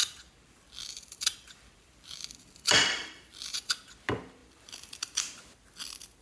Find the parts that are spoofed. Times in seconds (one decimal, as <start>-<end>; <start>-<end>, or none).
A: 0.0-3.7; 4.4-5.4